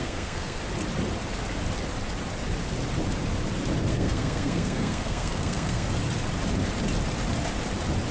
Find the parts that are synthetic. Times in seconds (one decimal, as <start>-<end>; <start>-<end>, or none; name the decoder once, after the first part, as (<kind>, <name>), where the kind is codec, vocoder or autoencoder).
0.0-0.6 (codec, SNAC); 3.9-5.9